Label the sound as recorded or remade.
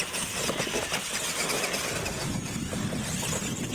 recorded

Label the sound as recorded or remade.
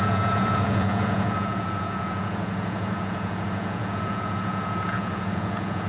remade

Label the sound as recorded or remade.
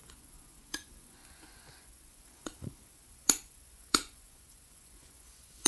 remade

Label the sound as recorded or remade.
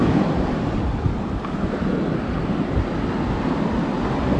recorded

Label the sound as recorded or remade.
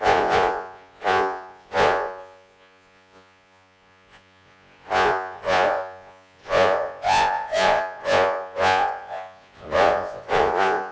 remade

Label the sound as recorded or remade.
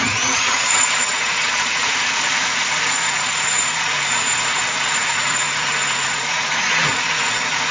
remade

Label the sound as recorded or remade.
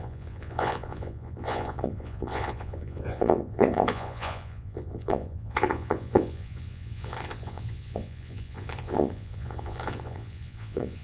remade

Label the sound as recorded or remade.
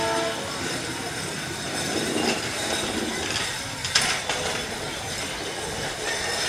recorded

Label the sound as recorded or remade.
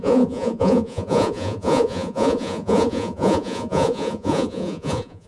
remade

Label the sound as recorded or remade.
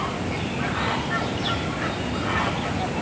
recorded